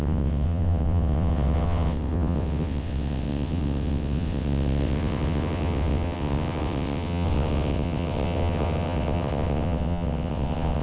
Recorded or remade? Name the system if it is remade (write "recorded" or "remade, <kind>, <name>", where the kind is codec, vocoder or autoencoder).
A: remade, vocoder, WaveNeXt